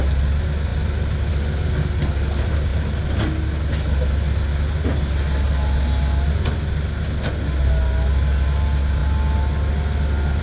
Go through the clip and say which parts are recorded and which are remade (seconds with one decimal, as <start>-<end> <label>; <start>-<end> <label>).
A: 0.0-10.4 recorded